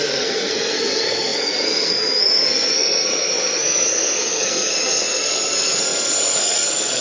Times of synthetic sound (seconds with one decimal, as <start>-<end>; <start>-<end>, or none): 0.0-7.0